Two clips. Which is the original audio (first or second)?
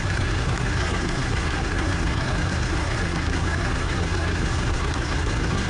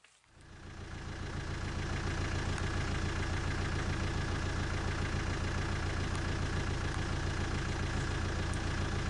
second